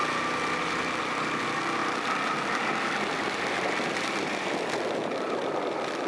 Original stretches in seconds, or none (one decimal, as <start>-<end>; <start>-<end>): 0.0-6.1